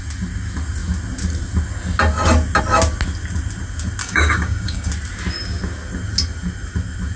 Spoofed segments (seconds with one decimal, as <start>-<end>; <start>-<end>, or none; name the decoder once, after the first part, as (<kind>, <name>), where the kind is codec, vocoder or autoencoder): 4.0-4.9 (codec, DAC)